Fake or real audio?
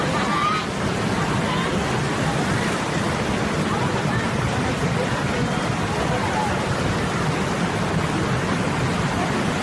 real